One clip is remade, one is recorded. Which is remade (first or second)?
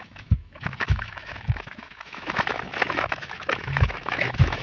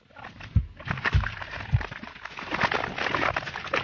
first